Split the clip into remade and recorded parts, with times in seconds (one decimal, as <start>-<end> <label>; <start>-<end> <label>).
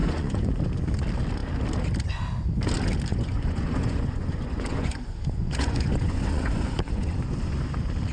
0.0-0.6 remade; 0.6-3.1 recorded; 3.1-7.6 remade; 7.6-8.1 recorded